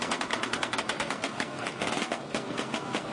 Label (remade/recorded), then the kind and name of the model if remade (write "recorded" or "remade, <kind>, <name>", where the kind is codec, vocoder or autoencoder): remade, codec, SNAC